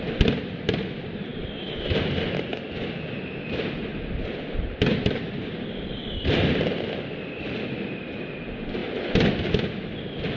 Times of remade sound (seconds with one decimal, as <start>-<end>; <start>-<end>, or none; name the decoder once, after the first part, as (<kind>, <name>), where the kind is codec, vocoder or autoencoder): 0.0-1.3 (vocoder, BigVGAN v2); 2.0-2.5; 3.5-8.8; 9.8-10.4